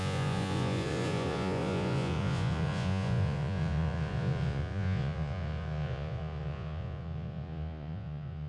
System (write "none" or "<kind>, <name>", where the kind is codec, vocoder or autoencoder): vocoder, Vocos